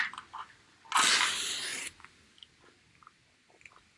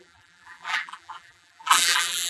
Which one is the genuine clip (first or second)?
first